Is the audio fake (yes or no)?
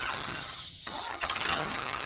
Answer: yes